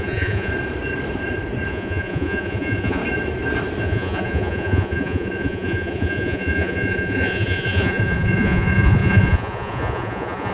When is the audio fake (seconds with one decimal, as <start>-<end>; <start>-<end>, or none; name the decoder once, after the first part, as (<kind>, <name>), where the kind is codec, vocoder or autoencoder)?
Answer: 0.0-0.5 (vocoder, Vocos); 1.7-3.0; 3.8-10.5